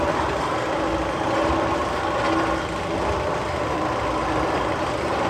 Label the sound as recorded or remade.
recorded